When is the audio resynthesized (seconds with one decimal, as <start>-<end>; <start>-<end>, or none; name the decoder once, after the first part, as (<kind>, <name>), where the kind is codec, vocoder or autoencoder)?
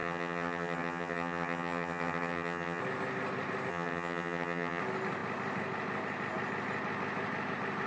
0.0-2.8 (vocoder, HiFi-GAN); 3.7-4.8